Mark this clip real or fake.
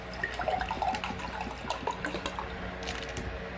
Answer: real